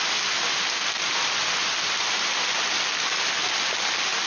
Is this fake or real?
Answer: real